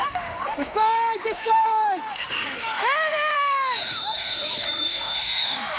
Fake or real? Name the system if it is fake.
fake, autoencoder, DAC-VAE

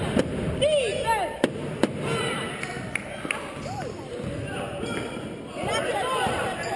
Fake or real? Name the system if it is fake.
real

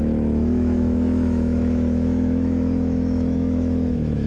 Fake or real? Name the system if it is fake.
fake, autoencoder, DAC-VAE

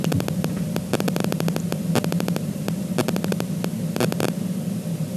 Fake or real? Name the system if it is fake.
real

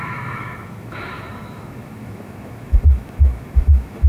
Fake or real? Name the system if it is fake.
fake, autoencoder, DAC-VAE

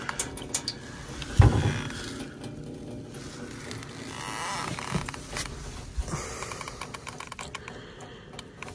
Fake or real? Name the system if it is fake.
real